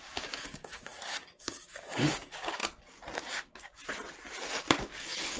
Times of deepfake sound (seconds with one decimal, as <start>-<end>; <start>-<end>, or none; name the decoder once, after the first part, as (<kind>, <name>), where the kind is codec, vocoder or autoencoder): 0.0-2.6 (codec, DAC); 3.2-3.8; 4.8-5.4